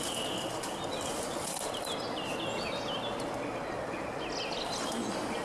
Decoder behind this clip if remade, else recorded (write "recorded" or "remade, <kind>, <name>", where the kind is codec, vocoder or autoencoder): recorded